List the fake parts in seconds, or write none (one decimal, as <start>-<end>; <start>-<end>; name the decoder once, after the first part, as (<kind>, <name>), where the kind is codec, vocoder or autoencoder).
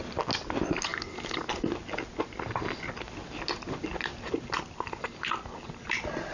none